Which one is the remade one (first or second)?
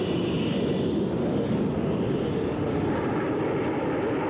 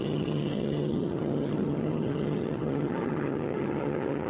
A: second